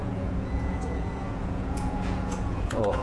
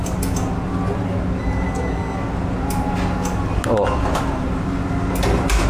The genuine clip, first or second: second